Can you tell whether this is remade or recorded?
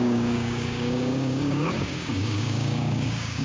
remade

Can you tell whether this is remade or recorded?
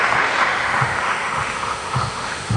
remade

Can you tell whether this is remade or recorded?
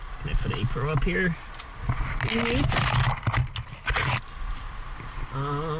recorded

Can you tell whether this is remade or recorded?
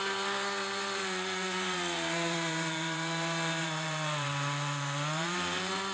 remade